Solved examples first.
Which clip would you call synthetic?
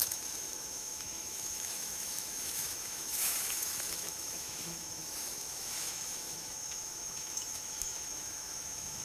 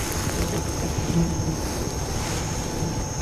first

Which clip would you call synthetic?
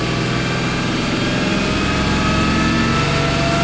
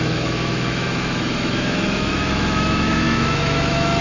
second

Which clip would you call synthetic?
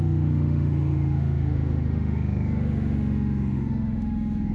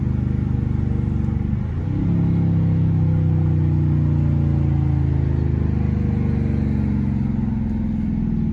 first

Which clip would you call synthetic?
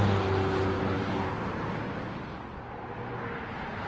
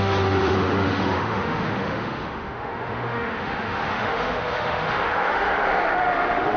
second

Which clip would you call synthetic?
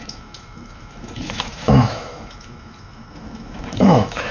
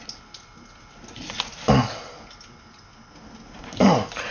first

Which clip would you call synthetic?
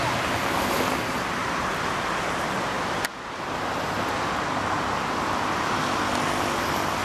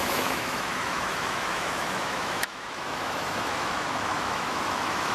second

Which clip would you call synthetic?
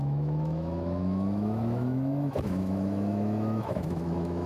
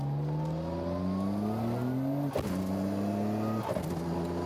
first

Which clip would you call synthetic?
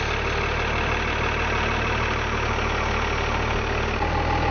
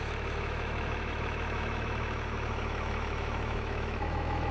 second